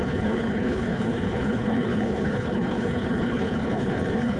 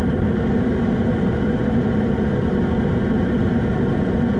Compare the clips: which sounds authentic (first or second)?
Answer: second